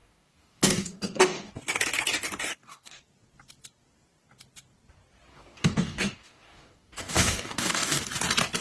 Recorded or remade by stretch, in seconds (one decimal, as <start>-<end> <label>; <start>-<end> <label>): 0.0-1.5 remade; 1.5-2.5 recorded; 2.5-3.0 remade; 3.0-5.3 recorded; 5.3-8.0 remade; 8.0-8.6 recorded